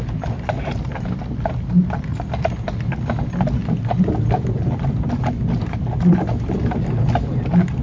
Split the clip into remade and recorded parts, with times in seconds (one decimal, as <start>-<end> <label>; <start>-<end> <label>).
0.0-3.6 recorded; 3.6-5.2 remade; 5.2-7.8 recorded